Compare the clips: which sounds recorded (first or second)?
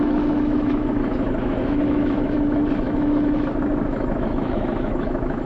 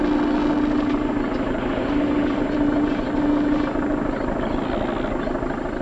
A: second